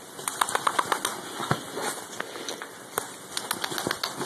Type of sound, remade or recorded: recorded